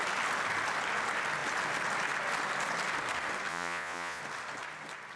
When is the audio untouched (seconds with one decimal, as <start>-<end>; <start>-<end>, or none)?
0.0-3.5; 4.2-5.2